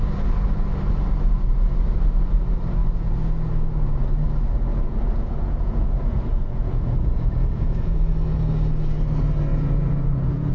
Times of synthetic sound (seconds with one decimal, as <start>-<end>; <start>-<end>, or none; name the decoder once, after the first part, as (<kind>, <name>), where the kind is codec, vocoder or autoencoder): 2.8-3.5 (vocoder, Vocos); 4.7-8.1; 9.5-10.5